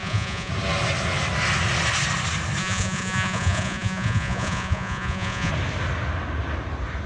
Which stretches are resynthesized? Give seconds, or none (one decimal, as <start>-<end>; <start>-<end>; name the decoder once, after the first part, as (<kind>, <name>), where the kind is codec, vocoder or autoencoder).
0.0-0.5 (vocoder, Vocos); 2.6-5.5